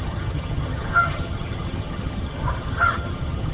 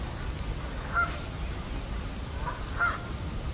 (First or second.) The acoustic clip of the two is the second